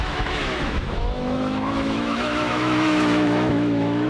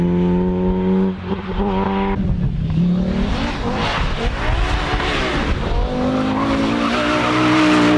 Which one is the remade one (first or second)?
first